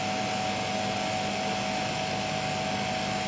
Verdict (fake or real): real